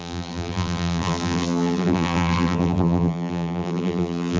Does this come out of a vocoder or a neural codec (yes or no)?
yes